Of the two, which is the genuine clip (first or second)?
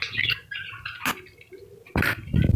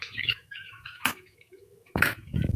first